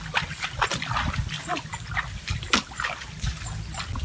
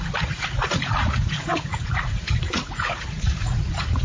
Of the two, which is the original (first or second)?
first